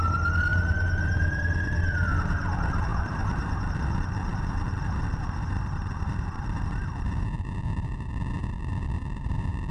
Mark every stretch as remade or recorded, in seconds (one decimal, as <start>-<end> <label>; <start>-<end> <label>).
0.0-0.5 recorded; 0.5-1.4 remade; 1.4-2.9 recorded; 2.9-3.6 remade; 3.6-9.7 recorded